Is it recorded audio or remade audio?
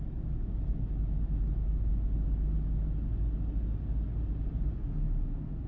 recorded